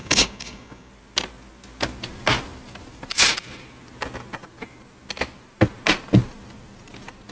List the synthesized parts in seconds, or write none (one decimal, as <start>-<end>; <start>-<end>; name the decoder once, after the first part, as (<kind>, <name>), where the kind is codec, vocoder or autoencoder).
0.0-0.9 (codec, DAC)